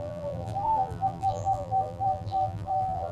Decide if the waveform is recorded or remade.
remade